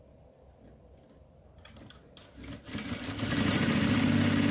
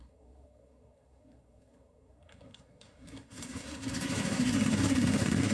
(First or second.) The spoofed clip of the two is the second